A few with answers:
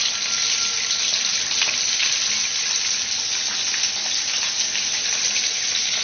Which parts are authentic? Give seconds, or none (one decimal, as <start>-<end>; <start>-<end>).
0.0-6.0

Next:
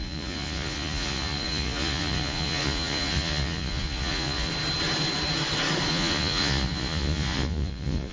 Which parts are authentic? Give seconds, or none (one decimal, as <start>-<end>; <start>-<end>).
4.5-5.9

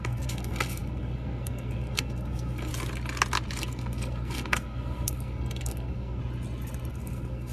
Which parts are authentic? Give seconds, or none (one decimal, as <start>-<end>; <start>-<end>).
2.7-3.6; 6.2-6.9

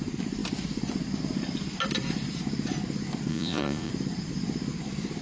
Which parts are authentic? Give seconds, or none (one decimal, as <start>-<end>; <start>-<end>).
0.0-3.3; 3.9-5.2

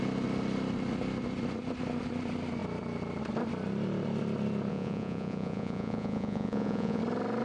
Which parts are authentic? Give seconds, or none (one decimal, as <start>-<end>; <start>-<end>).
0.0-4.7; 7.0-7.4

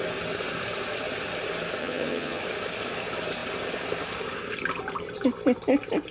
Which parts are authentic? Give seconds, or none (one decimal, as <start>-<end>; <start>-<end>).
0.0-1.8; 2.4-6.1